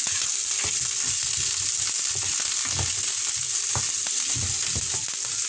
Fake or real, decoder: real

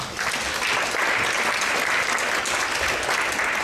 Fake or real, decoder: real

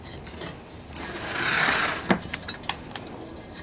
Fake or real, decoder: real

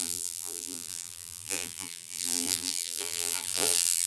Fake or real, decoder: fake, vocoder, BigVGAN v2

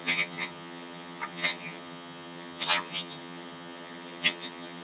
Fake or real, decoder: fake, vocoder, HiFi-GAN